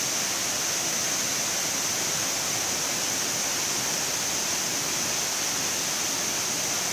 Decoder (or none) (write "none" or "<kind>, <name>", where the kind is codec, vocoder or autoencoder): none